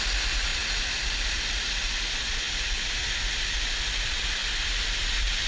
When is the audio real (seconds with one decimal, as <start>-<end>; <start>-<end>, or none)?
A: 0.0-5.5